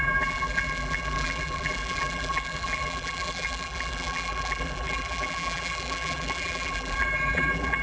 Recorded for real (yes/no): no